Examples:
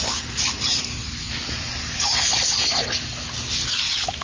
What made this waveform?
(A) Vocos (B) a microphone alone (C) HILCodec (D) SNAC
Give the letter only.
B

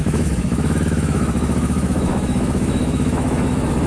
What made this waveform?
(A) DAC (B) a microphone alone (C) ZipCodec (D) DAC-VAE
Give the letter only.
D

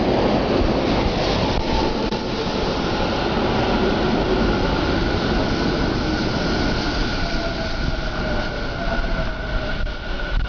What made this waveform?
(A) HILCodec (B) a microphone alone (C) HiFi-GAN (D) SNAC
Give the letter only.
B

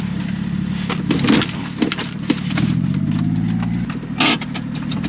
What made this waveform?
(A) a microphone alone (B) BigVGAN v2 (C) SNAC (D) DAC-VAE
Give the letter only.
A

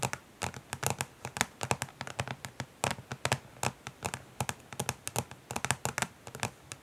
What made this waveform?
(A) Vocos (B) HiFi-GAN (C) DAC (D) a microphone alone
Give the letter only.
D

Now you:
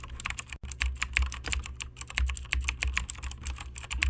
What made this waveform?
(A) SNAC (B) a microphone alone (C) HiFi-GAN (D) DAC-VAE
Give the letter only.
B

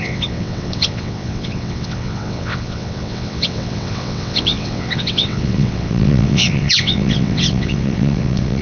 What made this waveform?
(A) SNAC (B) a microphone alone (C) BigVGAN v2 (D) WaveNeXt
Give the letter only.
D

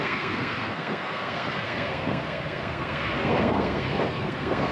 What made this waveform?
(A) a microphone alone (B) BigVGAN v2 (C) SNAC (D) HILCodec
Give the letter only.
C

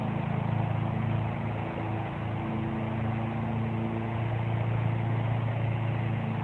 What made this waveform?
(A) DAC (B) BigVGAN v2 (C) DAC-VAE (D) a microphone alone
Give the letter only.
D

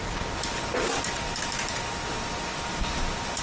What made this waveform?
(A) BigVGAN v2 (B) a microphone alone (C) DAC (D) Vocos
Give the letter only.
B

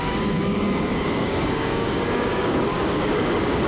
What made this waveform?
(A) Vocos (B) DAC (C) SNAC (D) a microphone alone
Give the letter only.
B